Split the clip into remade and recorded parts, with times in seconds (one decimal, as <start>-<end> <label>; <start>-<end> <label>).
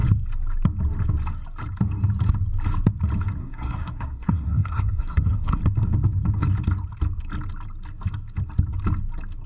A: 0.0-3.4 recorded; 3.4-5.6 remade; 5.6-9.5 recorded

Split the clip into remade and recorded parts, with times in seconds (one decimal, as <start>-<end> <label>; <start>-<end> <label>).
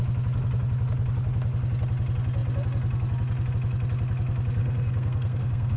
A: 0.0-4.6 recorded; 4.6-5.8 remade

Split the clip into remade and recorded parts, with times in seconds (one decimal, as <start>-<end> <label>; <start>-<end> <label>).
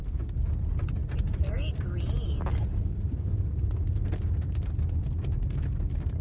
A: 0.0-6.2 recorded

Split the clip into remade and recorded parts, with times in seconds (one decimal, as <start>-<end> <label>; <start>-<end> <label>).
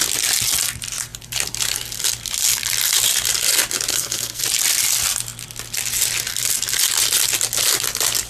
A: 0.0-3.9 recorded; 3.9-4.4 remade; 4.4-8.3 recorded